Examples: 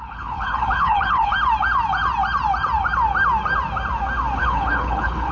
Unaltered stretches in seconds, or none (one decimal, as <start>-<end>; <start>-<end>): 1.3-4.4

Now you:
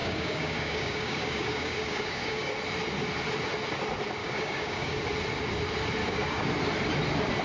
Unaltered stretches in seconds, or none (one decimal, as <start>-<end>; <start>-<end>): 2.5-4.2; 5.0-6.0; 6.5-7.4

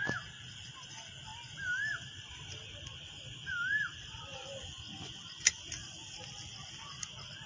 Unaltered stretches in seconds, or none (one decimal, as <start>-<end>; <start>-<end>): 0.0-7.5

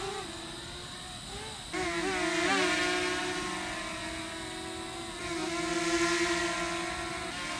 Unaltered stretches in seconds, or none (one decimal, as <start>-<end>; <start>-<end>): 0.0-7.6